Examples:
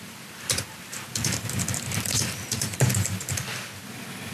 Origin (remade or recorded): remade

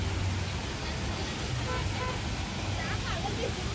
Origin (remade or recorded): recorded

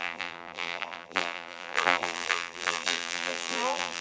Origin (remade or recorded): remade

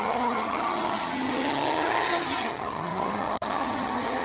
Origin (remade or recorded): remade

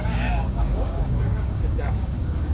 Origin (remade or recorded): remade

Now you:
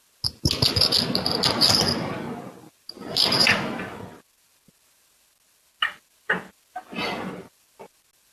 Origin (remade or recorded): recorded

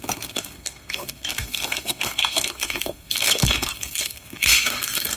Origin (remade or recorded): remade